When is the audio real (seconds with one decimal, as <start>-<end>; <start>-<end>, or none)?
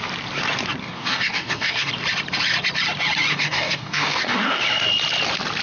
0.0-0.8; 1.9-3.3; 4.6-5.6